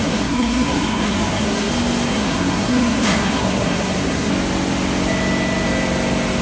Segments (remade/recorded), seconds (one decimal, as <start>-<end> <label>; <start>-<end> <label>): 0.0-1.7 remade; 1.7-2.1 recorded; 2.1-4.3 remade; 4.3-6.4 recorded